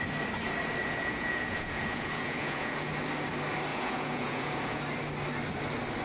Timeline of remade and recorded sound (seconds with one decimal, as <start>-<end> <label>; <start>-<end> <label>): 0.0-0.8 recorded; 0.8-2.9 remade; 2.9-3.7 recorded; 3.7-4.8 remade; 4.8-6.0 recorded